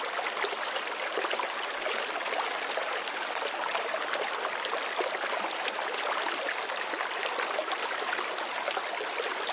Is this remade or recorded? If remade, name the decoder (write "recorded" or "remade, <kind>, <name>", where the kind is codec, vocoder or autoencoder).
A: recorded